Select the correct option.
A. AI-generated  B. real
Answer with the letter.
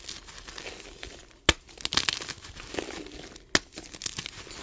B